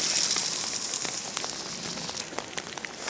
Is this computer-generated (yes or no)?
no